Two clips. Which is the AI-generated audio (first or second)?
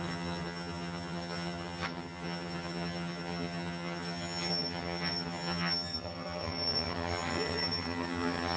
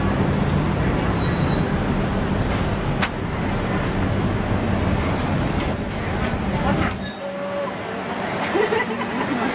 first